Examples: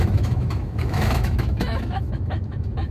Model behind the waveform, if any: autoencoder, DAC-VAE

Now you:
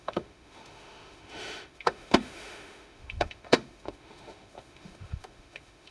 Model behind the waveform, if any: autoencoder, DAC-VAE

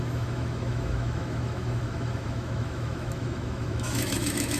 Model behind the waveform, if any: autoencoder, DAC-VAE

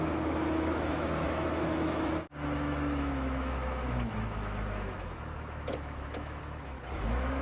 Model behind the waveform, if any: autoencoder, DAC-VAE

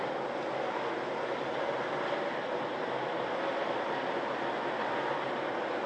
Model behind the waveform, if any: none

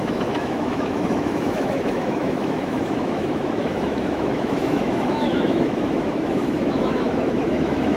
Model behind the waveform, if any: autoencoder, DAC-VAE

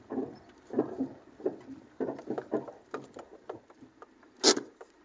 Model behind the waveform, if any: none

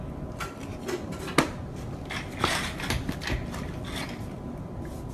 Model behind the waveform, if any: none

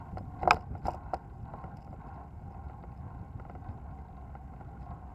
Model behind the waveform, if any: none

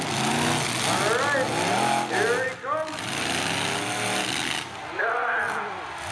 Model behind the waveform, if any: none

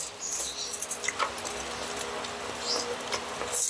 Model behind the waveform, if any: none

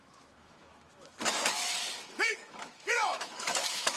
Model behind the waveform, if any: autoencoder, DAC-VAE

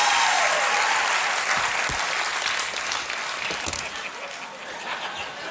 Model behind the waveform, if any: none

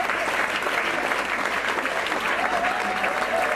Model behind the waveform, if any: none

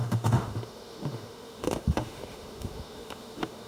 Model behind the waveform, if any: autoencoder, DAC-VAE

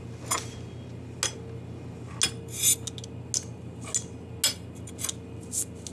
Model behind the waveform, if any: none